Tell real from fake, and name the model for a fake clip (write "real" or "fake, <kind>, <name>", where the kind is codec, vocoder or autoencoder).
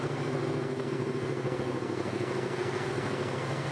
fake, codec, SNAC